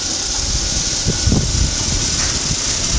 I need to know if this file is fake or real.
real